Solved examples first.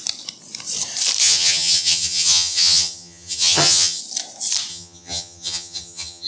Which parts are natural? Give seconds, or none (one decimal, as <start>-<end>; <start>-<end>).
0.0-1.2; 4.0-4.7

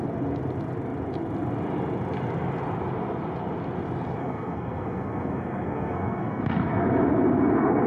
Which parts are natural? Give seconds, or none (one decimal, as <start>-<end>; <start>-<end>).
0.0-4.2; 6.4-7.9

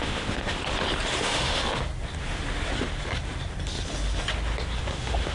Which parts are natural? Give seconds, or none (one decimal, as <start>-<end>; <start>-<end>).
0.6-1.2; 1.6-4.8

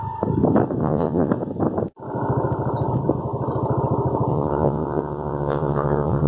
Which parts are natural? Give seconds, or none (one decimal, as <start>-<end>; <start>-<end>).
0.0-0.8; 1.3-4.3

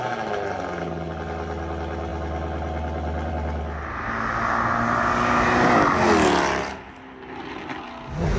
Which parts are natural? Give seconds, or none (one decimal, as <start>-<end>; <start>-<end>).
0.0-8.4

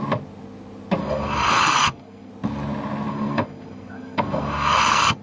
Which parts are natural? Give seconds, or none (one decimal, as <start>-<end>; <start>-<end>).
0.0-1.0; 2.3-3.1

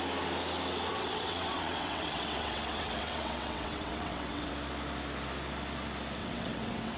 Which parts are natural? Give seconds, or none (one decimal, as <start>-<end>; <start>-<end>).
0.0-0.9; 4.5-6.2

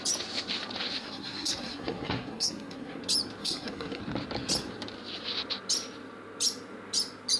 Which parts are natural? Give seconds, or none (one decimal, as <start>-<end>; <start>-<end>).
0.0-1.0; 3.0-3.4; 4.0-7.4